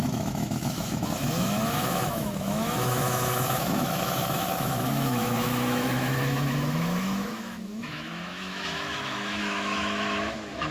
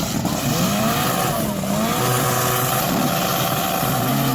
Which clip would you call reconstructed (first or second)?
first